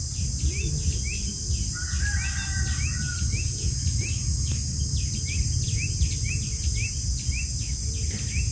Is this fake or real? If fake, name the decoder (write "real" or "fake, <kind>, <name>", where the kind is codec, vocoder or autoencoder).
real